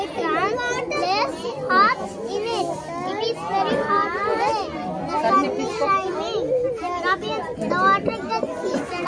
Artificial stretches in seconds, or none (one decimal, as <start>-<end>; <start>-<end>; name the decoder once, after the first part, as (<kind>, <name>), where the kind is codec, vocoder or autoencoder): none

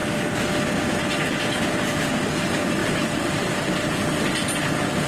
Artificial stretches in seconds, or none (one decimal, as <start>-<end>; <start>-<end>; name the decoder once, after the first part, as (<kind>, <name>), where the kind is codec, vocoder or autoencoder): 2.8-4.0 (vocoder, BigVGAN v2)

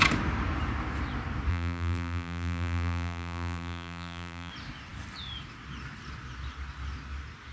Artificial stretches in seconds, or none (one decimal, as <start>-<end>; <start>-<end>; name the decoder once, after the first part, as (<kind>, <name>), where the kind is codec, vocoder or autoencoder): 1.5-4.5 (vocoder, BigVGAN v2)

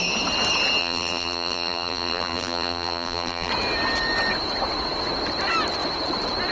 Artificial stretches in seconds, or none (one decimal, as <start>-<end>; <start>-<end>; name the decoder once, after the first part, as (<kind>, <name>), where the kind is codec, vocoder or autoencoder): 0.8-3.5 (vocoder, BigVGAN v2)

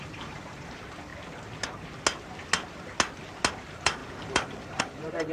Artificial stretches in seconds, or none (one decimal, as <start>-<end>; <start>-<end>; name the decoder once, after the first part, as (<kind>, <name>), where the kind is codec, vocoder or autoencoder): 0.0-1.1 (vocoder, BigVGAN v2); 3.5-5.3